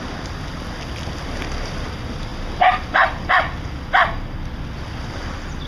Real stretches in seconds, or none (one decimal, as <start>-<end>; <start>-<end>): 0.0-5.7